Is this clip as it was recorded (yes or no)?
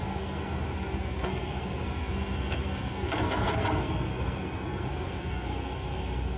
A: no